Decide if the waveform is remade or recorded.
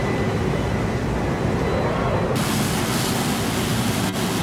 recorded